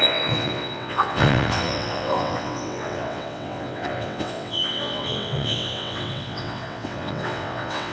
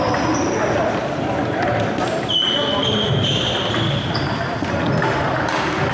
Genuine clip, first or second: second